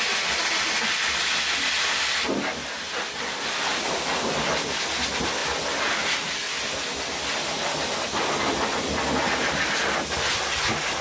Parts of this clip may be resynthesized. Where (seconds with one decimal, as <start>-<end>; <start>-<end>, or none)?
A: none